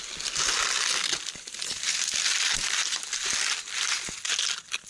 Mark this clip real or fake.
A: real